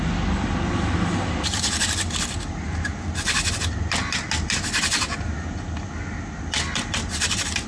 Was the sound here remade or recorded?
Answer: recorded